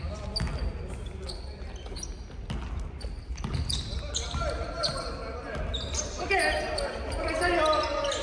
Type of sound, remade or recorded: recorded